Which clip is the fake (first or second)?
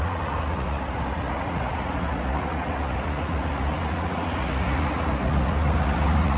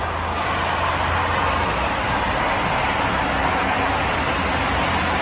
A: first